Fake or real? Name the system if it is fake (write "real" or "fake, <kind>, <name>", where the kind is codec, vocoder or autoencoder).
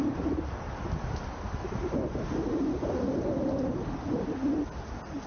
real